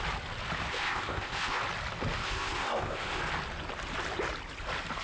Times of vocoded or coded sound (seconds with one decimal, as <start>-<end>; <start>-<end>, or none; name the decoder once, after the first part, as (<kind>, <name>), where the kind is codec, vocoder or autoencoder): 0.7-1.6 (codec, ZipCodec); 2.2-3.2